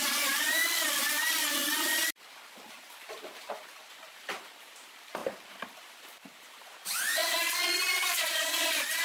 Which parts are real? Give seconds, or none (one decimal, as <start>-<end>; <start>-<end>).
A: 0.6-2.7; 5.2-5.8; 7.2-7.8